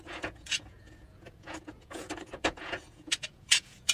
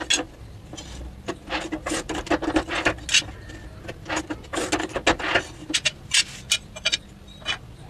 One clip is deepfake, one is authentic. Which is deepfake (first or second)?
first